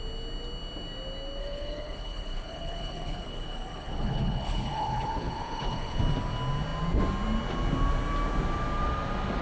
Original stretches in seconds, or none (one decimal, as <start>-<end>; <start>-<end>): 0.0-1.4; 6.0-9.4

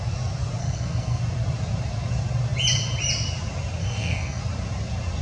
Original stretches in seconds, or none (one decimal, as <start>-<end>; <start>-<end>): 0.0-0.6; 1.2-3.8; 4.4-5.2

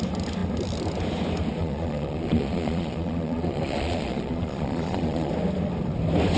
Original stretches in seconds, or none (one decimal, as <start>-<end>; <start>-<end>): 0.0-1.6; 5.3-6.4

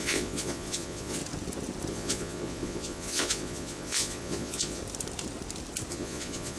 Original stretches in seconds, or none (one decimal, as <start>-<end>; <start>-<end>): 1.2-1.9; 4.8-5.9

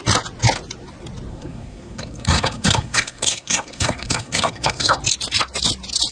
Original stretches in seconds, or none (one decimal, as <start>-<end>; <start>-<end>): 0.0-1.3; 5.0-6.1

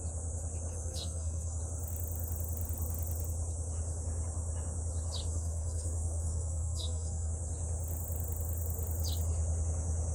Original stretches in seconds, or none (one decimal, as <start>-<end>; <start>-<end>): 0.0-0.7; 1.6-5.3; 7.3-10.1

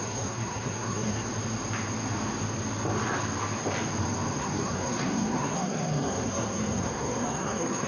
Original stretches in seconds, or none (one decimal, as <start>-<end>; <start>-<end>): 1.3-4.4